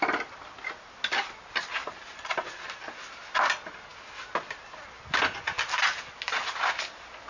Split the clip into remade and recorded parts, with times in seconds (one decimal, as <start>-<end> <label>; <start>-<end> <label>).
0.0-1.8 recorded; 1.8-2.5 remade; 2.5-7.3 recorded